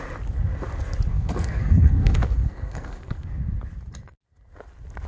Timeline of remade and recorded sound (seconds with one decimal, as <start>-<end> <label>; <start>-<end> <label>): 0.0-1.1 recorded; 1.1-3.4 remade; 3.4-5.1 recorded